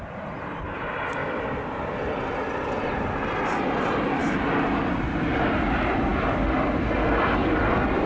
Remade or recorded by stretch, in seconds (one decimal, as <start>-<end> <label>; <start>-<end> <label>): 0.0-8.1 recorded